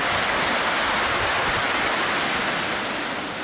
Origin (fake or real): real